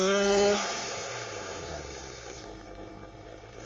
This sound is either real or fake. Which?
fake